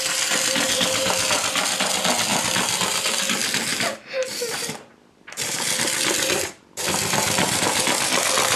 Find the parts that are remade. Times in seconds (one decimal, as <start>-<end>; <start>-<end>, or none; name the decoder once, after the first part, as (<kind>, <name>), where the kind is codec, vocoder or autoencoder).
2.3-3.2 (vocoder, BigVGAN v2); 3.7-7.6